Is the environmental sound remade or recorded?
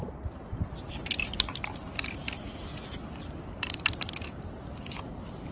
recorded